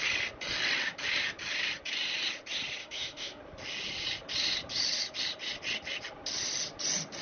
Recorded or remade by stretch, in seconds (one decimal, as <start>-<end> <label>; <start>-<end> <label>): 0.0-2.8 recorded; 2.8-3.4 remade; 3.4-7.2 recorded

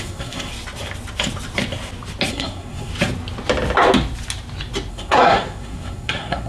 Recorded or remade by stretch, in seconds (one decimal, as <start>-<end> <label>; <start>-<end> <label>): 0.0-0.5 remade; 0.5-2.3 recorded; 2.3-2.9 remade; 2.9-4.9 recorded; 4.9-6.5 remade

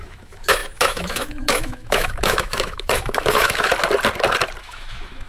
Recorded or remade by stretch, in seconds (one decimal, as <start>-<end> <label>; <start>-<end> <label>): 0.0-3.7 remade; 3.7-4.6 recorded; 4.6-5.3 remade

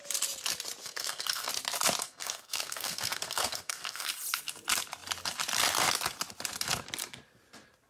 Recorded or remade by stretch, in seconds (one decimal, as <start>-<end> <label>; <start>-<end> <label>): 0.0-0.8 recorded; 0.8-1.5 remade; 1.5-2.0 recorded; 2.0-4.1 remade; 4.1-7.9 recorded